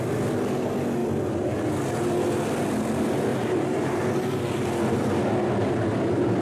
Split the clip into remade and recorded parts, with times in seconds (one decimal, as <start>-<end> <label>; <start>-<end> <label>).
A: 0.0-3.3 recorded; 3.3-4.0 remade; 4.0-6.4 recorded